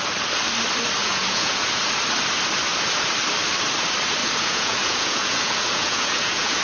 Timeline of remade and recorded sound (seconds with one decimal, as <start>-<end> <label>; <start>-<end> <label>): 0.0-1.0 recorded; 1.0-1.8 remade; 1.8-4.2 recorded; 4.2-6.6 remade